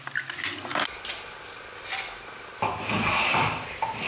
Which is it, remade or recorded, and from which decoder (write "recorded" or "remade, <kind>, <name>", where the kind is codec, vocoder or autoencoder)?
recorded